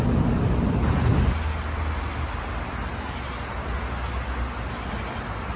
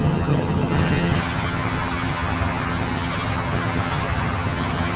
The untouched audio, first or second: first